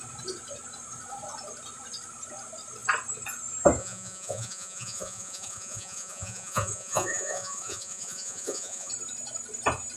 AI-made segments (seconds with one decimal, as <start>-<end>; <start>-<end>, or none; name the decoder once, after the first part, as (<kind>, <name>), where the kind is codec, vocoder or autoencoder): 3.8-8.9 (vocoder, Vocos)